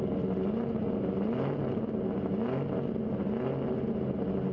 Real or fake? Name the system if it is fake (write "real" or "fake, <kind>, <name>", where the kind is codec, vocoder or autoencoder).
real